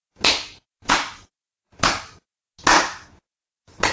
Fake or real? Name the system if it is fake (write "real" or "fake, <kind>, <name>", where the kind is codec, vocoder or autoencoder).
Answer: real